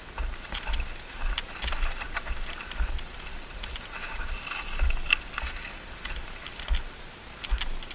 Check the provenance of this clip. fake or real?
real